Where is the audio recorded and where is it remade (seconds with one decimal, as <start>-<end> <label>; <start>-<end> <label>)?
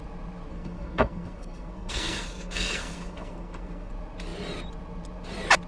0.0-0.5 recorded; 0.5-3.9 remade; 3.9-5.7 recorded